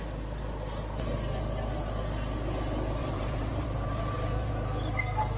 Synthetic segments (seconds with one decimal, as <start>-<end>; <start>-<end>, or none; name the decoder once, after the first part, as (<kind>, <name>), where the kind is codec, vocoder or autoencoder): 3.0-4.5 (vocoder, BigVGAN v2)